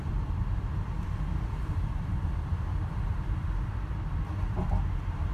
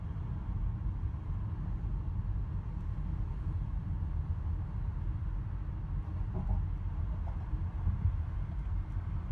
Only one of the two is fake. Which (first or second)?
first